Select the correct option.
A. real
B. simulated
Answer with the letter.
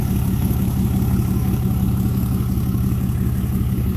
B